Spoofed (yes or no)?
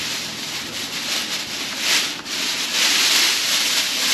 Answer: yes